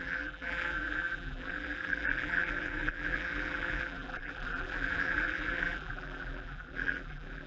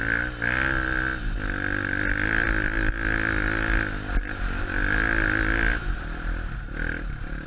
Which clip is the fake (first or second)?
first